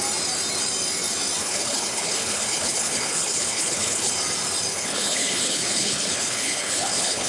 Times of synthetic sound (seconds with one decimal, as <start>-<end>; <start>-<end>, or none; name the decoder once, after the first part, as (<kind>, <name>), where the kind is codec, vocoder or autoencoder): 1.4-4.1 (codec, HILCodec); 4.7-7.3

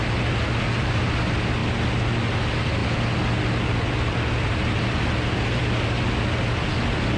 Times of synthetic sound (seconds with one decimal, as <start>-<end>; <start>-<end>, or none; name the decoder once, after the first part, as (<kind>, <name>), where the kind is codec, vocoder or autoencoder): none

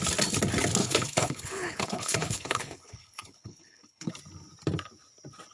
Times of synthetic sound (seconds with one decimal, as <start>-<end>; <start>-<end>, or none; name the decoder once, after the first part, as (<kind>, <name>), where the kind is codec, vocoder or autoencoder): 0.8-4.1 (codec, HILCodec)

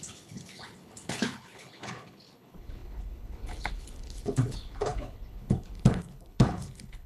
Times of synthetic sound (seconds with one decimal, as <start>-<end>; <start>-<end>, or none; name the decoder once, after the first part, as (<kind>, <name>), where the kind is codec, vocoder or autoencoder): 0.0-7.1 (codec, HILCodec)

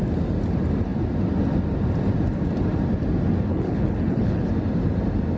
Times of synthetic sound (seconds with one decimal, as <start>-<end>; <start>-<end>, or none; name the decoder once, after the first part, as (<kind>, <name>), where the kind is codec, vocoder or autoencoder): 3.5-4.5 (codec, HILCodec)

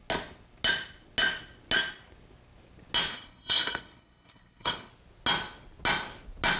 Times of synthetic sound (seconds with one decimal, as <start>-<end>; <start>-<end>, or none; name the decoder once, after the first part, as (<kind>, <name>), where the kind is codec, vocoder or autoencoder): 3.1-4.9 (codec, HILCodec)